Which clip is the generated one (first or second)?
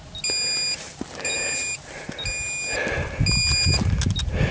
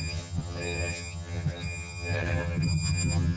second